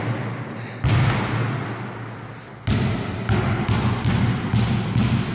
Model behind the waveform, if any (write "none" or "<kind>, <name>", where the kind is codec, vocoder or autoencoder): none